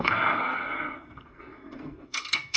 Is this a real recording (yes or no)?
no